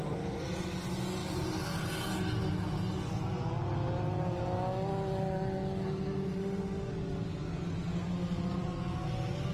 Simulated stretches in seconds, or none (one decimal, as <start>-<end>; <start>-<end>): 6.4-6.9